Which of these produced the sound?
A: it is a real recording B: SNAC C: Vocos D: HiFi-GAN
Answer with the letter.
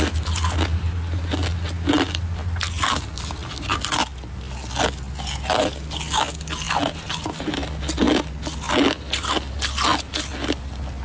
A